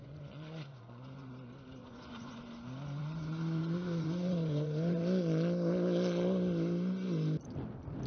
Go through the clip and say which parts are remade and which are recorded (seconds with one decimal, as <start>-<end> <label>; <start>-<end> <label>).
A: 0.0-1.3 remade; 1.3-1.8 recorded; 1.8-2.4 remade; 2.4-3.0 recorded; 3.0-5.0 remade; 5.0-8.1 recorded